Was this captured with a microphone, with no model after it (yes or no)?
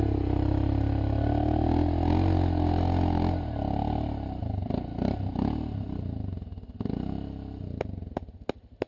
yes